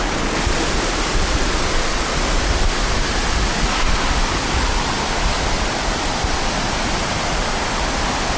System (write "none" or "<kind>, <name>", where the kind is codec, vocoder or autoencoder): none